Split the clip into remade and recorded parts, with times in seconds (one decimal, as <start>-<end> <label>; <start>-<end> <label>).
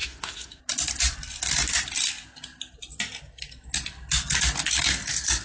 0.0-0.6 remade; 0.6-5.4 recorded